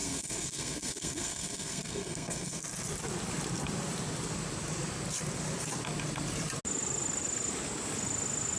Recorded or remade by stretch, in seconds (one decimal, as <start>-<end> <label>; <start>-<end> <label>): 0.0-2.6 remade; 2.6-8.6 recorded